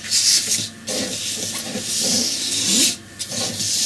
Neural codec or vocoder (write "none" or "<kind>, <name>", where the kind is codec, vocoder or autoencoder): none